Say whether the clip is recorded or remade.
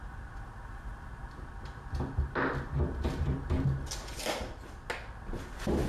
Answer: recorded